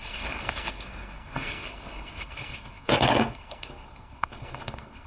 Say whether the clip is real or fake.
fake